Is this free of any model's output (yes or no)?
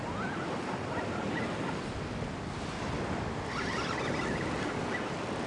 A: yes